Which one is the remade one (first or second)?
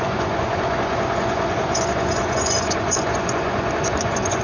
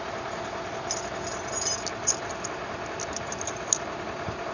first